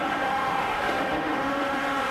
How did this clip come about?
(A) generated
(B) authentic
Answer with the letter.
A